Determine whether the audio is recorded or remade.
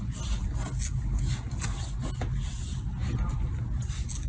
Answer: recorded